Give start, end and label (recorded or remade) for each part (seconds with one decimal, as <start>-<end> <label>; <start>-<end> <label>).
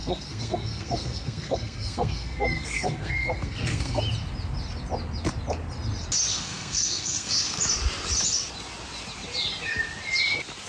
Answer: 0.0-4.0 remade; 4.0-6.3 recorded; 6.3-7.6 remade; 7.6-10.7 recorded